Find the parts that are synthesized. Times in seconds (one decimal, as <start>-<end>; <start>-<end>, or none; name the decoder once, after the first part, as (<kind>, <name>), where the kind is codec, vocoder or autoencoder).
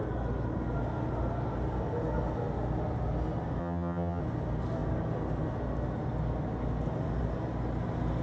3.6-4.2 (vocoder, HiFi-GAN)